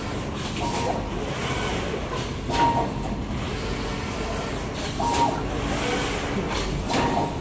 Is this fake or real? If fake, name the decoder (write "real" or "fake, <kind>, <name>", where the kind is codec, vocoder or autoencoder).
real